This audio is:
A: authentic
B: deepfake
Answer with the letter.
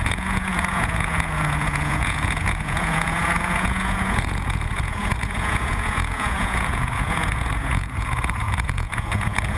B